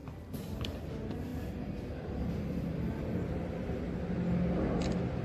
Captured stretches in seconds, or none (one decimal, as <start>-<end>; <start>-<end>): 0.9-1.3; 3.8-5.2

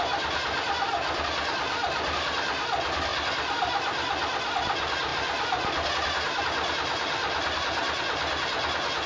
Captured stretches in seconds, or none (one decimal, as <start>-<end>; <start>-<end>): 7.8-9.1

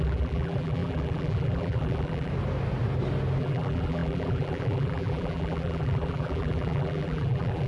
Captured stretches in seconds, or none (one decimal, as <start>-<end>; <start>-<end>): 2.3-3.4

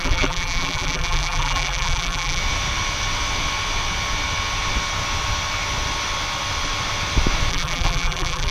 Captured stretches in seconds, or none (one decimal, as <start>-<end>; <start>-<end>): 2.4-7.5

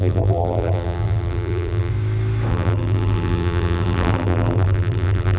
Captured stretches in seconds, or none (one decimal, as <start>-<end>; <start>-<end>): 1.9-2.5

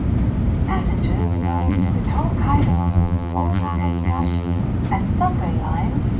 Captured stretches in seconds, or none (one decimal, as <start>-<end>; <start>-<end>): 0.0-1.2; 1.9-2.7; 4.6-6.2

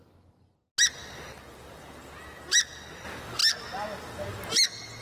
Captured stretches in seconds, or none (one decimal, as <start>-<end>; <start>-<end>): 0.0-5.0